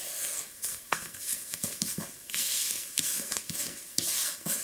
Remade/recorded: remade